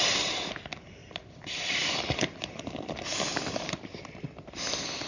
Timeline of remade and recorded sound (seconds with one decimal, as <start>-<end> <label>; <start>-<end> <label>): 0.0-1.0 recorded; 1.0-4.1 remade; 4.1-5.1 recorded

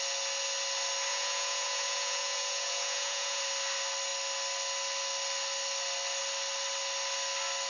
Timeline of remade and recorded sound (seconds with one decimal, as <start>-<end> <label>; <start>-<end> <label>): 0.0-1.1 recorded; 1.1-3.4 remade; 3.4-7.7 recorded